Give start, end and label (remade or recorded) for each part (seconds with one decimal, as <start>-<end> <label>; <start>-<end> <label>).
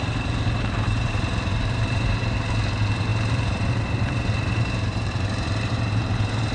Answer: 0.0-6.5 remade